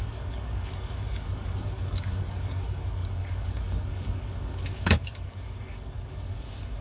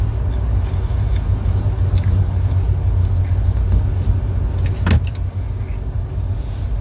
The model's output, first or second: first